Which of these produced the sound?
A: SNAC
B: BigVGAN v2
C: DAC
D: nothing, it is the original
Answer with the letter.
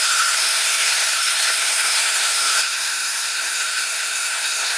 A